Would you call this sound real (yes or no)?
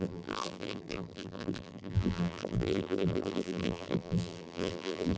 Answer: no